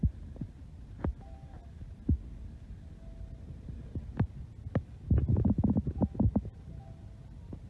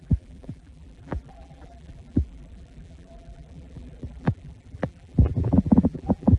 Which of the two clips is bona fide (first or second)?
first